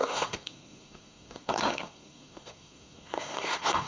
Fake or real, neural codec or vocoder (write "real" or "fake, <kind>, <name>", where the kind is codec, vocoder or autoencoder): fake, codec, SNAC